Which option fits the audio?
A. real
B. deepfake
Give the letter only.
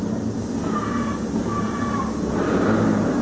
A